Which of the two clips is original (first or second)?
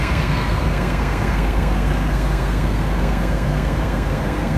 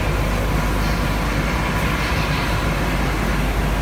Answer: second